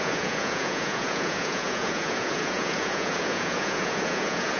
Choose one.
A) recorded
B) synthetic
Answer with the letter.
B